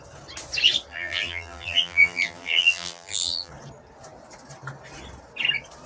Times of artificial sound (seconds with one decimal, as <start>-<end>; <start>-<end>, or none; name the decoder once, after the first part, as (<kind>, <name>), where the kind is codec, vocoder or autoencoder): 0.9-3.5 (vocoder, BigVGAN v2)